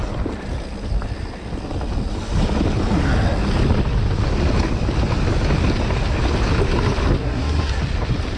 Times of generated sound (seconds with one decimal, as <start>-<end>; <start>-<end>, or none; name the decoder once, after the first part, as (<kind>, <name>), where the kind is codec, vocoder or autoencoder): 7.2-7.8 (codec, SNAC)